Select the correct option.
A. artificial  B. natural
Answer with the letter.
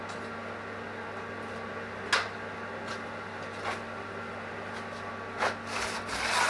B